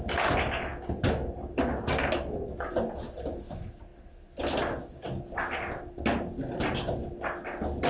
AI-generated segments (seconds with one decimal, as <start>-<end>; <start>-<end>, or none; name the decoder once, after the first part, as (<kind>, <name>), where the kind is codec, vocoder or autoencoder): none